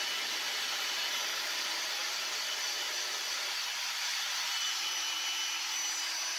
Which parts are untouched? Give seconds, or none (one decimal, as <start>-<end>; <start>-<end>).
0.0-6.4